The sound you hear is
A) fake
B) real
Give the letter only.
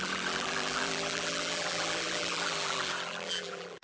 A